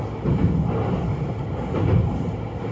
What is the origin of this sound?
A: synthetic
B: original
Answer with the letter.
B